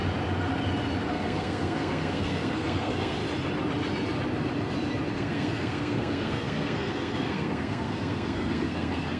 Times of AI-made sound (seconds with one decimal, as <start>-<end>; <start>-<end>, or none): 1.1-3.2; 5.1-9.2

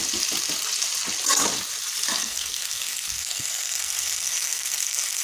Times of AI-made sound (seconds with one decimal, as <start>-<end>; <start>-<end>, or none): 2.2-5.2

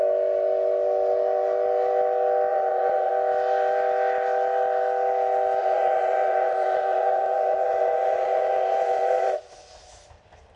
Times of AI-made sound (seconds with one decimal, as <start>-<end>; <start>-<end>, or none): 2.5-3.1; 5.6-9.4

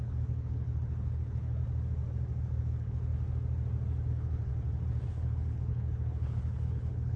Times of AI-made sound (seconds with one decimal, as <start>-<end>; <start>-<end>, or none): 0.0-1.6; 2.6-3.1; 4.1-4.5; 5.1-7.2

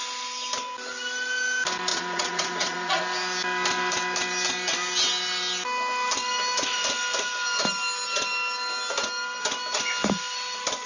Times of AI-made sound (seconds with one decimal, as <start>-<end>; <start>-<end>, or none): 1.9-3.0

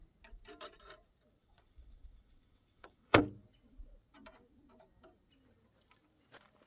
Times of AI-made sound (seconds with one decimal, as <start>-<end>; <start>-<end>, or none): 1.4-3.2

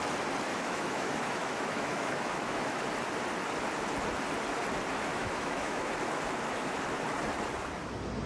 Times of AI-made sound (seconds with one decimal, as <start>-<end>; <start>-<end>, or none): 0.5-2.8; 5.1-5.9

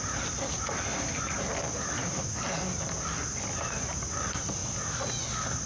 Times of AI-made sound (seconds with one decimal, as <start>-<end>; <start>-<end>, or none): 0.0-4.6; 5.1-5.7